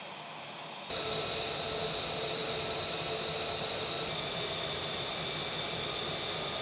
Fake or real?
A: real